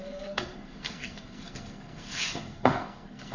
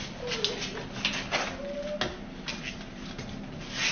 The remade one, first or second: first